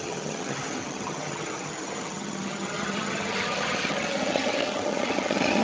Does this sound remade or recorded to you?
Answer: remade